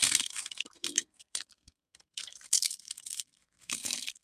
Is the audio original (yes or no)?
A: no